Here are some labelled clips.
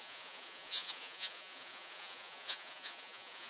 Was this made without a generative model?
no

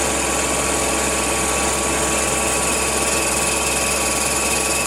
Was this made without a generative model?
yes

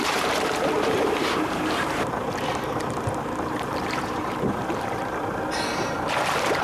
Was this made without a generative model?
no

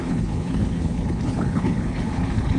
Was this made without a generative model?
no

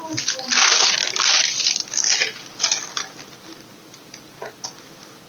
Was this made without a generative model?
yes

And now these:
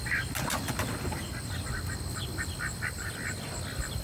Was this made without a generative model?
yes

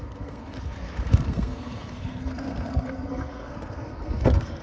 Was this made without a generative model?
no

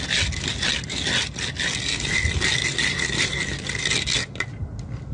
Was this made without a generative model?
yes